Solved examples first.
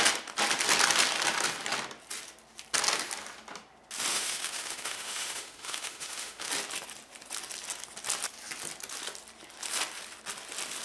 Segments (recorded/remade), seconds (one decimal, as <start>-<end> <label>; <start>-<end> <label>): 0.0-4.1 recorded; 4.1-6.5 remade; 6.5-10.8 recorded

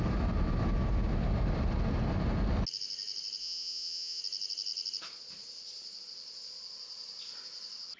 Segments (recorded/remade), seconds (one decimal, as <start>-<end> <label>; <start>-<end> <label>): 0.0-3.4 recorded; 3.4-4.2 remade; 4.2-8.0 recorded

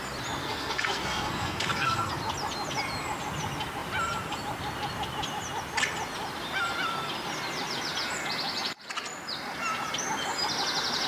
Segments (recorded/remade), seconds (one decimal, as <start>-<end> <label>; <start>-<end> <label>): 0.0-0.4 recorded; 0.4-2.1 remade; 2.1-11.1 recorded

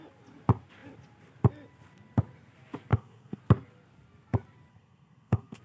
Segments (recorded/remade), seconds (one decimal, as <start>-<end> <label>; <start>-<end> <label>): 0.0-2.9 recorded; 2.9-3.4 remade; 3.4-4.7 recorded; 4.7-5.6 remade

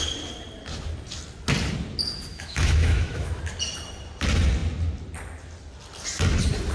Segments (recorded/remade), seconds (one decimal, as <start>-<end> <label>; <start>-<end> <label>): 0.0-2.3 recorded; 2.3-3.4 remade; 3.4-6.7 recorded

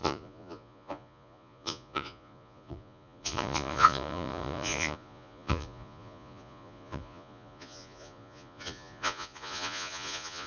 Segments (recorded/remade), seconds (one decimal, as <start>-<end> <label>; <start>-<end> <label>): 0.0-10.5 remade

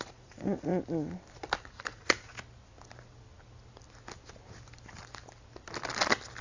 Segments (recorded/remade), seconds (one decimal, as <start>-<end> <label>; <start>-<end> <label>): 0.0-0.7 remade; 0.7-1.6 recorded; 1.6-2.3 remade; 2.3-6.4 recorded

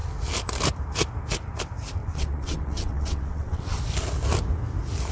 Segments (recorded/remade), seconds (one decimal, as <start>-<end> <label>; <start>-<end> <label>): 0.0-2.0 recorded; 2.0-3.8 remade; 3.8-5.1 recorded